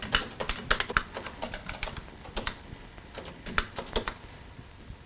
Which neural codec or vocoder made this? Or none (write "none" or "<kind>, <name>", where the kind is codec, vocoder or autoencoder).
none